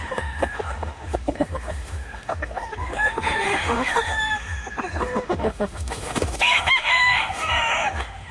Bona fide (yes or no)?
no